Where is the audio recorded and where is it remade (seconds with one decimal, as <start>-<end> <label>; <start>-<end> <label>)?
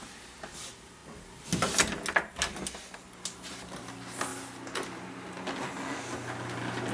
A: 0.0-6.9 recorded